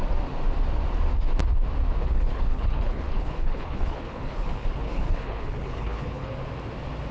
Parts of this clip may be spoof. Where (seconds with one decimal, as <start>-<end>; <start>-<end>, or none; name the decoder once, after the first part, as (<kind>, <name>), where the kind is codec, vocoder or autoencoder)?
2.0-6.3 (codec, HILCodec)